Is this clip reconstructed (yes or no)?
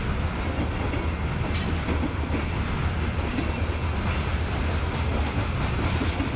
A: no